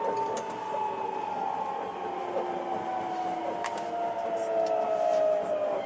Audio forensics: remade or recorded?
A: recorded